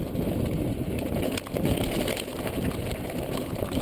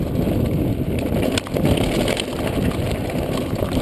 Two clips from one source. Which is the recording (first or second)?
second